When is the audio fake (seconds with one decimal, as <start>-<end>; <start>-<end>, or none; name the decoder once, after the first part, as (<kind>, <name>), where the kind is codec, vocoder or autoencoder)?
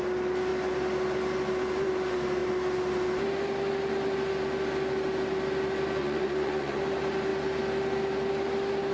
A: 6.0-6.8 (vocoder, Vocos)